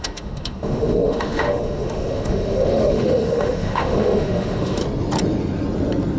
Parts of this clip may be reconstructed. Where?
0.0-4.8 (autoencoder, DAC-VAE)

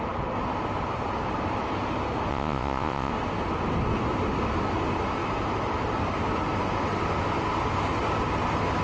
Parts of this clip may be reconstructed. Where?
2.3-3.1 (vocoder, Vocos)

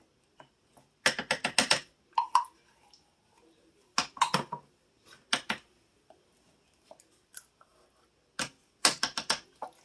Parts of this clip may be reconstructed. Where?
none

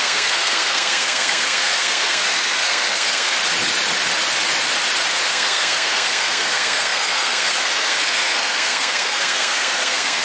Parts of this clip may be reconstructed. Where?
0.0-3.4 (codec, SNAC); 5.3-10.2

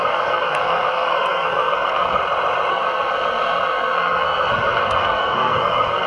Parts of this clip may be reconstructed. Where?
0.0-2.2 (codec, SNAC); 2.7-6.1